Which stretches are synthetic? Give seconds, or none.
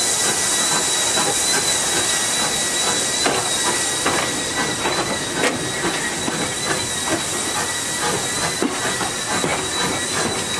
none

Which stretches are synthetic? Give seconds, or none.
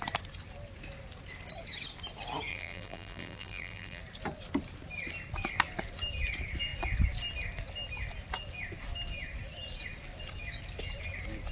2.5-4.0 (vocoder, BigVGAN v2)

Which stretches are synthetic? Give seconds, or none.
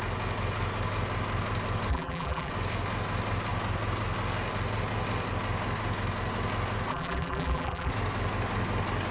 1.9-2.5 (vocoder, BigVGAN v2); 6.9-7.9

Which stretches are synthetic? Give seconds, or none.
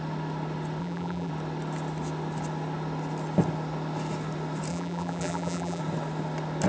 0.8-1.3 (vocoder, BigVGAN v2); 4.7-5.8